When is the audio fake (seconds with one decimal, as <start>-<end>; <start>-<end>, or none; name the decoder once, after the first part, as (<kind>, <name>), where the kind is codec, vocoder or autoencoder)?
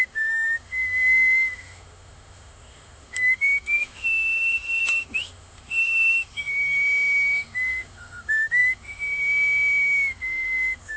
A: 0.0-11.0 (autoencoder, DAC-VAE)